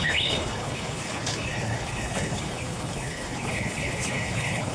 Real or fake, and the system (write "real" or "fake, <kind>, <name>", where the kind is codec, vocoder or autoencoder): fake, codec, HILCodec